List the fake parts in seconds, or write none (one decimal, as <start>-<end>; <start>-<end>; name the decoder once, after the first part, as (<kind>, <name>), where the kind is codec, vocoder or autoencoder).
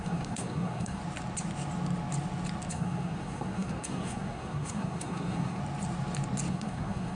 0.0-1.0 (codec, SNAC); 2.7-5.6; 6.5-7.1